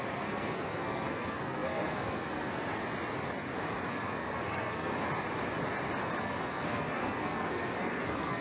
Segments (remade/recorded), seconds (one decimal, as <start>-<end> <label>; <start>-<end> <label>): 0.0-2.8 remade; 2.8-3.9 recorded; 3.9-4.9 remade; 4.9-6.2 recorded; 6.2-8.4 remade